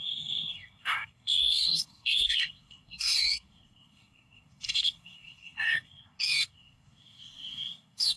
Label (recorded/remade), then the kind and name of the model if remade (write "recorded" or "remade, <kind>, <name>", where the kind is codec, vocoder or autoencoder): remade, codec, SNAC